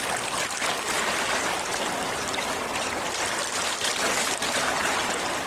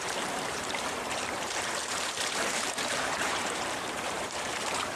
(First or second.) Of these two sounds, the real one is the first